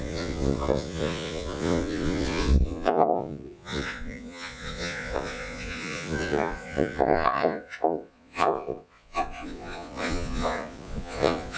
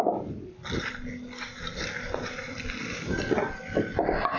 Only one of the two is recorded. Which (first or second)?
second